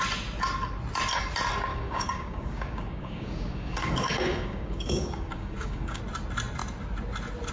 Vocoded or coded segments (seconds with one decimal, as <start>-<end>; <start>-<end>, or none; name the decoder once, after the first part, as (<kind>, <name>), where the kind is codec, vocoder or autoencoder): 1.7-6.0 (codec, DAC)